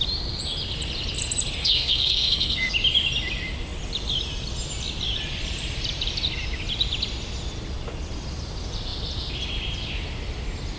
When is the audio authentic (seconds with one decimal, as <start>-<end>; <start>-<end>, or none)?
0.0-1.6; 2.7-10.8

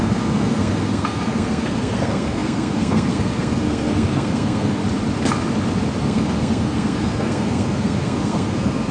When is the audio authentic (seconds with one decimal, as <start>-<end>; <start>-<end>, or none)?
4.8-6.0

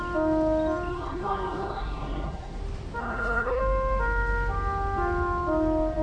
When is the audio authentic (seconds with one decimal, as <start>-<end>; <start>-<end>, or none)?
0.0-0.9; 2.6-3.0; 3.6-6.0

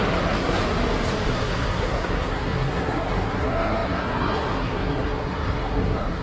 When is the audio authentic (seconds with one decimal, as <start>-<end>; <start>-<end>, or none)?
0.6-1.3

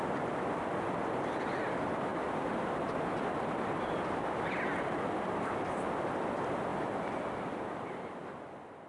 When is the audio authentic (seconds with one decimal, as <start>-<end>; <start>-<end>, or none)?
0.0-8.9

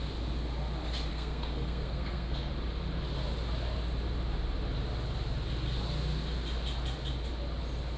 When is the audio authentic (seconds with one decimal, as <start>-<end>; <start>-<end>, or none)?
0.0-1.1; 2.5-8.0

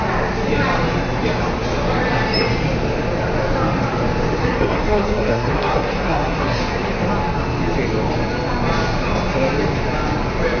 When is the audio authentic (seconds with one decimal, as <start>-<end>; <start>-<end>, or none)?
0.0-4.4; 6.6-10.6